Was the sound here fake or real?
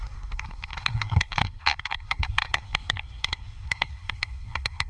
fake